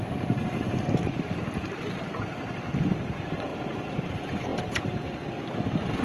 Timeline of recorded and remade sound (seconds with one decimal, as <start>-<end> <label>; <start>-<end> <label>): 0.0-6.0 remade